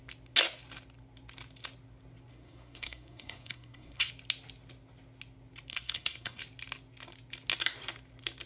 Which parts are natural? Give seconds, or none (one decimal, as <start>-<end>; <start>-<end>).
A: 0.0-2.3; 4.1-5.7; 6.4-8.5